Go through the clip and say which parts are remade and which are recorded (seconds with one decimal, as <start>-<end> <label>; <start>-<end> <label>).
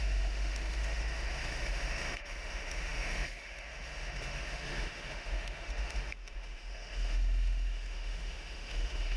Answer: 0.0-9.2 remade